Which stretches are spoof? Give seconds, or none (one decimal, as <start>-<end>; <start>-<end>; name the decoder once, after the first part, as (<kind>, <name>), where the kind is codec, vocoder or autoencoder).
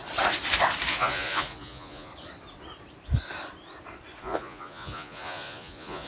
0.9-2.1 (vocoder, Vocos); 4.2-6.1